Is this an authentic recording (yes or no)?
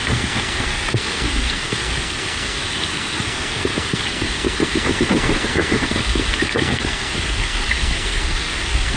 no